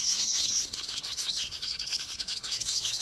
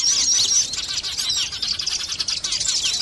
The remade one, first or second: first